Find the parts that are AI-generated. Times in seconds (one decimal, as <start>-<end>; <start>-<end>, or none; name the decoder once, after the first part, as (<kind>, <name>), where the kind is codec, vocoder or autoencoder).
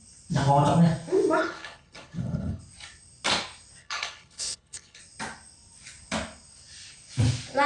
1.4-2.6 (codec, HILCodec); 3.8-5.0